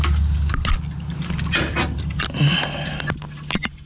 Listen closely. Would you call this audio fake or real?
real